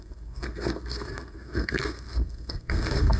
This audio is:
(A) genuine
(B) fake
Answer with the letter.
B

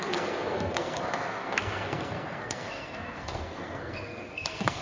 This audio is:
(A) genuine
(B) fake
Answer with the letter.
B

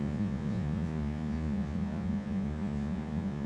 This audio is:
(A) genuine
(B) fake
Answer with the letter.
B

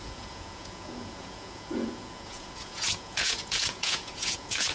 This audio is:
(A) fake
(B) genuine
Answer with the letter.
A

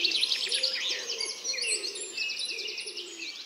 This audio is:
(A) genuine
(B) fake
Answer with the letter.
A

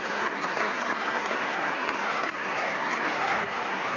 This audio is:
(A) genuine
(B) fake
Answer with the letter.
B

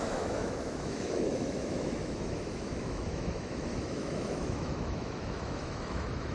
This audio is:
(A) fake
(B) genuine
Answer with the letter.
A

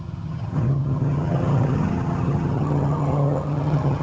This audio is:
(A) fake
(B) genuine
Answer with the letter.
A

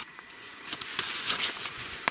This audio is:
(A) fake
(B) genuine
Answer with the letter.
A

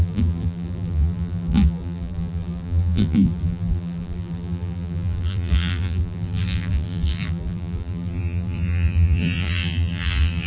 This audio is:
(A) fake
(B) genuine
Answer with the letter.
A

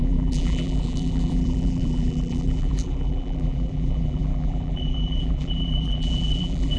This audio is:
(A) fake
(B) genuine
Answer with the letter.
A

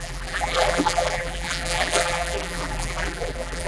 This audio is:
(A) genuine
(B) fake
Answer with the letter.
B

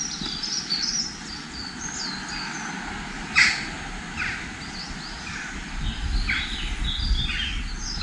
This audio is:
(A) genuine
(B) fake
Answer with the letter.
A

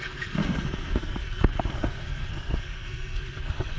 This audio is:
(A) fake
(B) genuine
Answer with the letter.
A